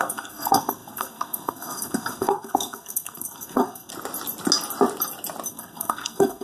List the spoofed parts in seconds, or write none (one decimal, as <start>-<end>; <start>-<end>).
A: 0.0-3.9; 5.5-6.4